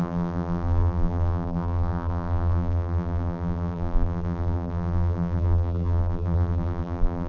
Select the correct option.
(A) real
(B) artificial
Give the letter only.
B